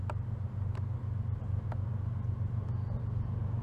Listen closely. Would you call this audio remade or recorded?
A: recorded